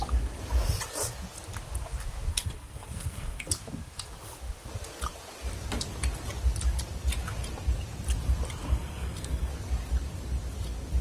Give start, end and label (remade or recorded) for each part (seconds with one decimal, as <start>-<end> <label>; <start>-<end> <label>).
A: 0.0-2.3 recorded; 2.3-3.5 remade; 3.5-8.7 recorded; 8.7-9.5 remade; 9.5-11.0 recorded